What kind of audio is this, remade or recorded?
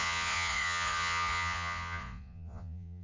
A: remade